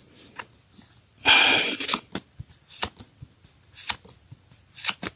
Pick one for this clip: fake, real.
real